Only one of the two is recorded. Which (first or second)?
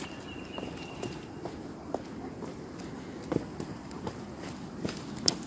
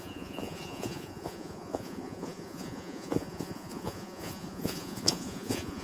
first